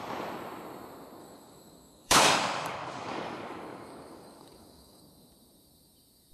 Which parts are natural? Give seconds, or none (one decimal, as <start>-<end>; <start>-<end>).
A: 0.0-1.2; 5.0-6.3